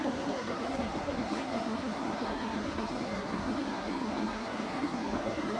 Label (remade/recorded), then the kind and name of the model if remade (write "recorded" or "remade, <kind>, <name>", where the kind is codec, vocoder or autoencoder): remade, codec, SNAC